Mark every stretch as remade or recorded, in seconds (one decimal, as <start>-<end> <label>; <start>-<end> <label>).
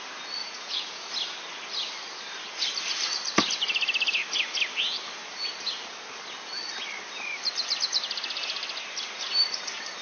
0.0-0.4 recorded; 0.4-1.1 remade; 1.1-10.0 recorded